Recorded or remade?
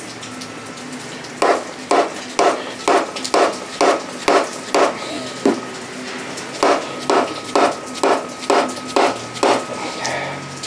recorded